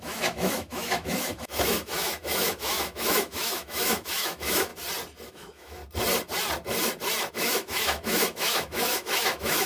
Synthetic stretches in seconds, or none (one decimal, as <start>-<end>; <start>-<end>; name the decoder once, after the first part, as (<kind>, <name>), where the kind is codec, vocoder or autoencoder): 0.0-4.7 (autoencoder, DAC-VAE); 5.3-5.8; 7.3-9.7